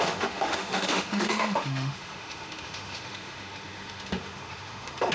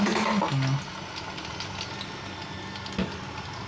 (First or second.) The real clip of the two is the second